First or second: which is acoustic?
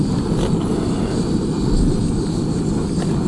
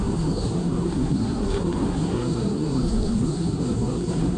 first